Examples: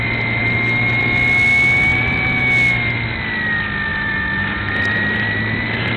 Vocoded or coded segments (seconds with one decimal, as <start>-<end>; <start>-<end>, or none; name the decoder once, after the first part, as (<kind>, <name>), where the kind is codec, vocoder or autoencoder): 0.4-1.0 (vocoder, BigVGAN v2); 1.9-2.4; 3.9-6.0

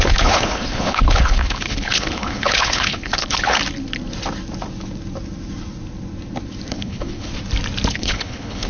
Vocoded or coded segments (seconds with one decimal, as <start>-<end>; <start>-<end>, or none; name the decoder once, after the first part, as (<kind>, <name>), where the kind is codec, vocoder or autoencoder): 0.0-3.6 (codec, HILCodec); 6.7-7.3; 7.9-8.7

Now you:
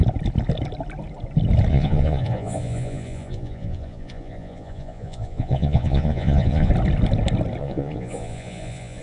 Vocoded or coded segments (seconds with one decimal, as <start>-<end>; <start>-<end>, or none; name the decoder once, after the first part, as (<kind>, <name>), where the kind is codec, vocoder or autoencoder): 1.7-6.7 (vocoder, Vocos); 7.6-9.0

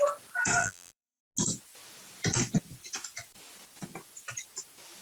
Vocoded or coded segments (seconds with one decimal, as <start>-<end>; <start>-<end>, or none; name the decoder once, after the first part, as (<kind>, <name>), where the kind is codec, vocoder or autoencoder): 0.6-1.2 (vocoder, BigVGAN v2)